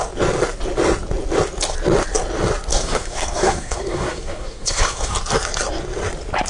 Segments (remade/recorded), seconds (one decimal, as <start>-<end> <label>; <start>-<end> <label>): 0.0-2.7 recorded; 2.7-5.1 remade; 5.1-6.5 recorded